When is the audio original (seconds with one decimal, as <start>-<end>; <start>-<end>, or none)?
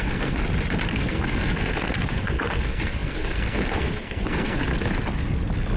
0.4-0.9; 4.7-5.8